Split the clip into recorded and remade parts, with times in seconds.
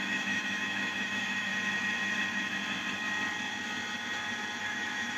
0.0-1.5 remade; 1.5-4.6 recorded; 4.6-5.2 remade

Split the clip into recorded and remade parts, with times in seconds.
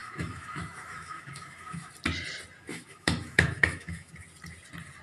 0.0-1.9 remade; 1.9-2.7 recorded; 2.7-4.1 remade; 4.1-5.0 recorded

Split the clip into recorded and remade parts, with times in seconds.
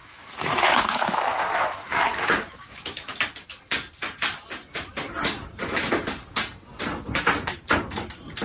0.0-3.2 remade; 3.2-8.4 recorded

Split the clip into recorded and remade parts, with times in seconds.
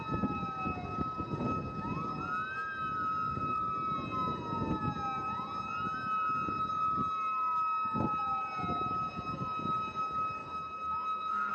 0.0-10.4 recorded; 10.4-11.5 remade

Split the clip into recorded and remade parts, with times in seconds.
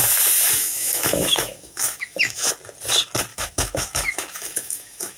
0.0-0.6 recorded; 0.6-2.5 remade; 2.5-3.3 recorded; 3.3-5.2 remade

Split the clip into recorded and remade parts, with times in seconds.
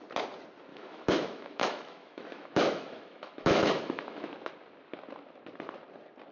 0.0-0.7 recorded; 0.7-4.5 remade; 4.5-6.3 recorded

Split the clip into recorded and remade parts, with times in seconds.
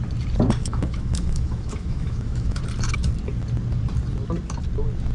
0.0-0.6 recorded; 0.6-2.6 remade; 2.6-5.1 recorded